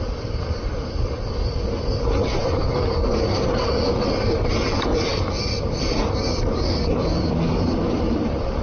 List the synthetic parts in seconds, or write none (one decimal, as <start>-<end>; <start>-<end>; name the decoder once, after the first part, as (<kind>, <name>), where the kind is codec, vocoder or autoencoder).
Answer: 0.0-2.4 (vocoder, BigVGAN v2); 3.1-8.6